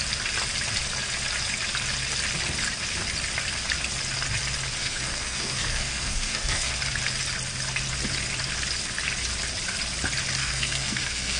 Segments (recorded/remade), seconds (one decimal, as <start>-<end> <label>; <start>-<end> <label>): 0.0-4.8 recorded; 4.8-6.7 remade; 6.7-10.4 recorded; 10.4-11.4 remade